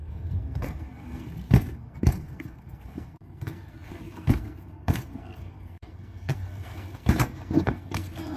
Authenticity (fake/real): fake